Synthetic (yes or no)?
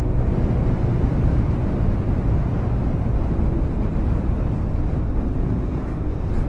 no